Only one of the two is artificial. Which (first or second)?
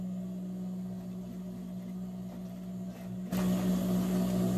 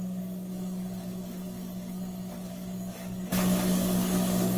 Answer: second